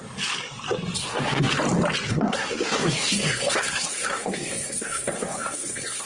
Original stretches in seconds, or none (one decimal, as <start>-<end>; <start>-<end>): 0.0-1.0; 1.5-2.1